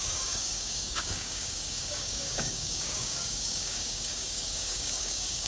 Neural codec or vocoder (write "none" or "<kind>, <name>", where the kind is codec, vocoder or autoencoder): codec, DAC